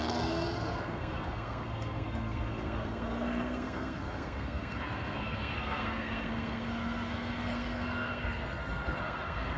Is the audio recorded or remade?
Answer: remade